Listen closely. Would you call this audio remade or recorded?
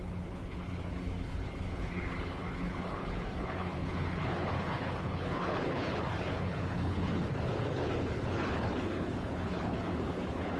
remade